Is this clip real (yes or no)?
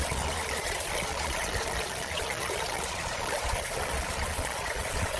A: no